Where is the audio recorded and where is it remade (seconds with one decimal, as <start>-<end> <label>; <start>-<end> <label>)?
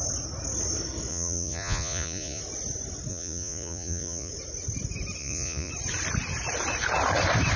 0.0-1.1 recorded; 1.1-2.4 remade; 2.4-3.1 recorded; 3.1-4.3 remade; 4.3-5.2 recorded; 5.2-5.7 remade; 5.7-7.6 recorded